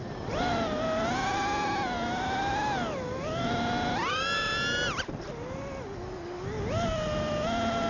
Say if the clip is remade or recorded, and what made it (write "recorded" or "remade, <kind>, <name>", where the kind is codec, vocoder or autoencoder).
recorded